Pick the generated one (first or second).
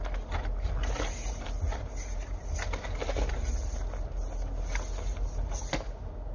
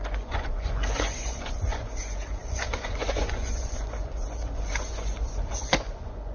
second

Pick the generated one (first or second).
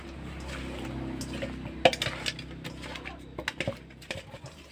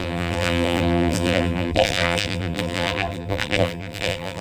second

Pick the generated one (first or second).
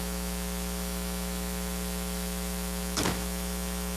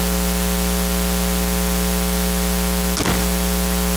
first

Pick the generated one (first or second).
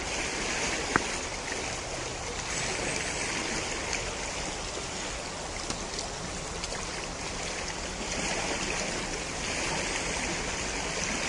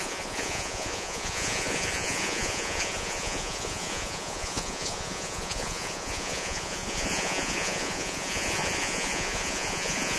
second